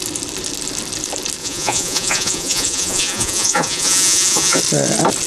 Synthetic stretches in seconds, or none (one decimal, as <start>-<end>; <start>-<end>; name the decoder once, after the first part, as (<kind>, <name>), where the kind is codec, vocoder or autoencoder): 1.4-4.6 (vocoder, Vocos)